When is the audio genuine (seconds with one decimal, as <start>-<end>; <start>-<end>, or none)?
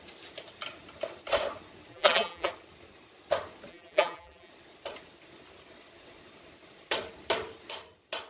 0.0-1.9; 2.5-3.7; 4.5-8.3